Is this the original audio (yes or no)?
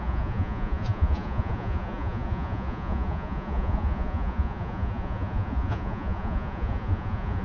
no